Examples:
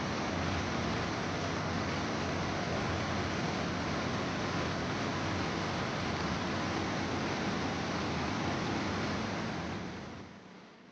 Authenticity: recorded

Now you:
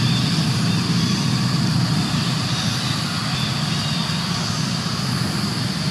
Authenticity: recorded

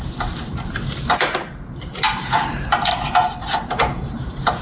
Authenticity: remade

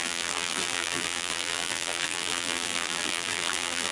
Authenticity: remade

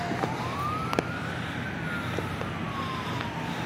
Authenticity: recorded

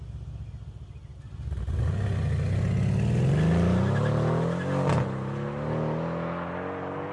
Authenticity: recorded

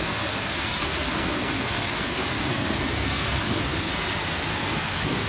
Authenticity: remade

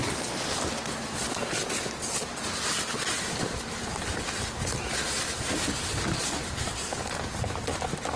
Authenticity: recorded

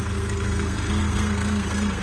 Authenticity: remade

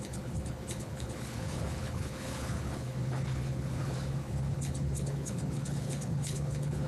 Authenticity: remade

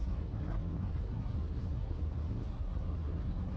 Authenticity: remade